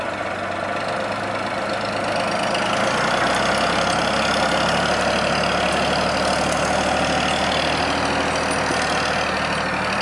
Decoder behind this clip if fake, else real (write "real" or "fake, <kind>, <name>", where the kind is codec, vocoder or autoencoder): real